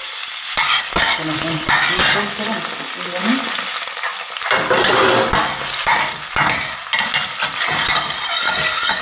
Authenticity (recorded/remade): recorded